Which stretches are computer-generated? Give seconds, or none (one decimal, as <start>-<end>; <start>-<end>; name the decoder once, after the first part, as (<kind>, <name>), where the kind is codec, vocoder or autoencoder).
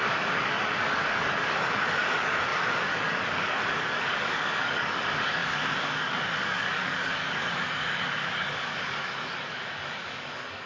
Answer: 0.0-10.7 (codec, DAC)